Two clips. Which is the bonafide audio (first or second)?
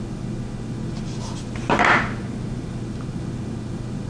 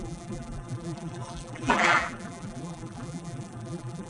first